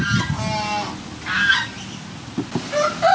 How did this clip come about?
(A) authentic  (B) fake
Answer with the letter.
A